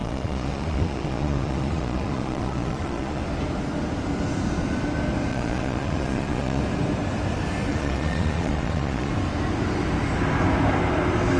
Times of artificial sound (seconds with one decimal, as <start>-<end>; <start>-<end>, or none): 0.0-3.2; 5.3-6.6; 7.7-9.1